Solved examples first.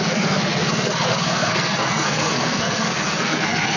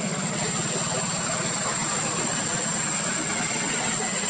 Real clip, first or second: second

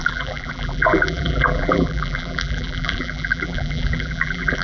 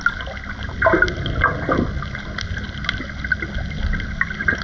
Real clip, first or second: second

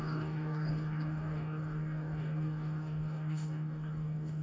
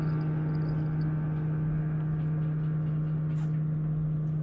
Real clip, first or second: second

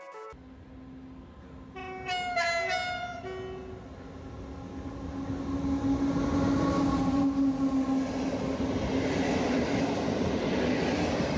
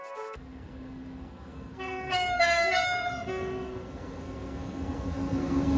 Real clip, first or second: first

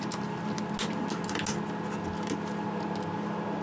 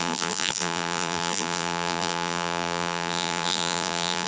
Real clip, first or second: first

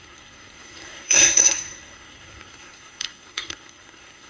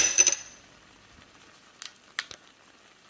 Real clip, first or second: second